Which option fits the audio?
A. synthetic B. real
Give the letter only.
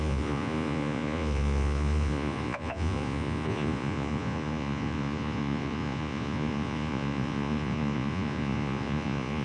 A